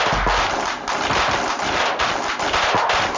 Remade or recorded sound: recorded